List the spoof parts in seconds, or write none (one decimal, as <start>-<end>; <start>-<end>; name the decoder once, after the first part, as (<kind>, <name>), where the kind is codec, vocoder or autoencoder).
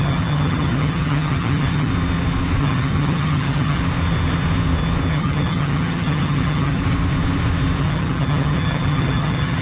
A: 0.0-1.9 (vocoder, HiFi-GAN); 2.6-3.8; 5.1-6.8; 7.8-9.6